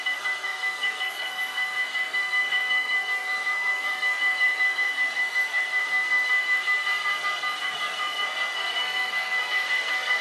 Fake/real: fake